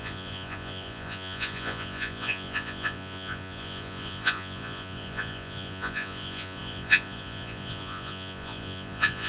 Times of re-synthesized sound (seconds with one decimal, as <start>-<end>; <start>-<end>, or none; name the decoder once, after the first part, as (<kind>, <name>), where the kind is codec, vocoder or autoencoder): 0.0-9.3 (vocoder, Vocos)